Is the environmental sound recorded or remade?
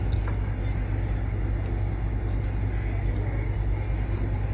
recorded